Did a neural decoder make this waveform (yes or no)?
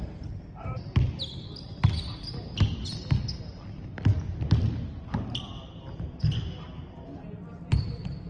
no